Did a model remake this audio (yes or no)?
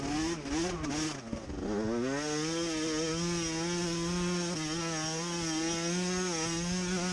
no